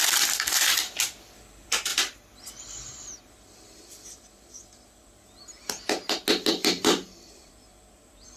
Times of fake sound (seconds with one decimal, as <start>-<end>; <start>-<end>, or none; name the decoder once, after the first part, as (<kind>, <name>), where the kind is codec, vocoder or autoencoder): 0.0-5.6 (vocoder, BigVGAN v2); 6.5-8.4